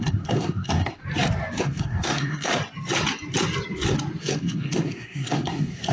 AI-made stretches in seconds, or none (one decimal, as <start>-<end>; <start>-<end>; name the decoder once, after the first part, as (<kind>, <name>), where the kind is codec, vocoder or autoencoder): 0.0-1.0 (codec, SNAC); 1.6-2.5; 4.2-5.9